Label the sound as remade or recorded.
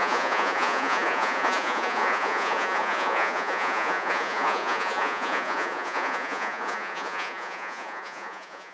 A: remade